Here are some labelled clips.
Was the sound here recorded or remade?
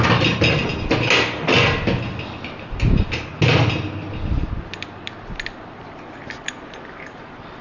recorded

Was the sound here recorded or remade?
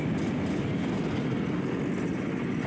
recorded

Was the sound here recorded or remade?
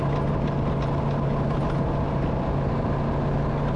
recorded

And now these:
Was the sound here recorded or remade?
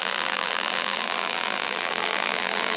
remade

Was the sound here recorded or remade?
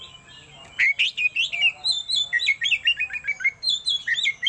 recorded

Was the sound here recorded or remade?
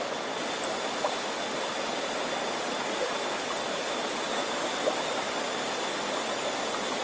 recorded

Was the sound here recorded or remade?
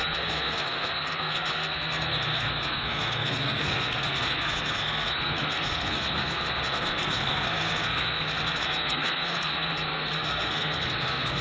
remade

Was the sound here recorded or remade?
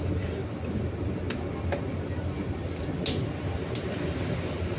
recorded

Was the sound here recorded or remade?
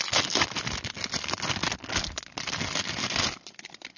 recorded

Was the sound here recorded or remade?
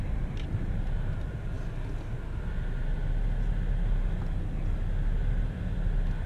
recorded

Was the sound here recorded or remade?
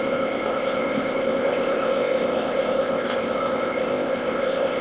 remade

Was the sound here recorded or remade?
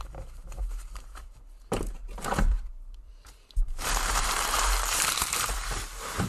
remade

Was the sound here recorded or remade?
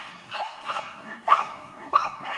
remade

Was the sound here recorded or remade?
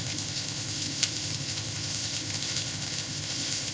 remade